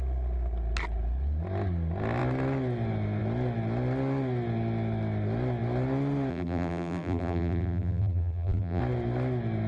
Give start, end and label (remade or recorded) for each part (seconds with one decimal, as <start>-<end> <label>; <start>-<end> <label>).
0.0-6.3 recorded; 6.3-8.8 remade; 8.8-9.7 recorded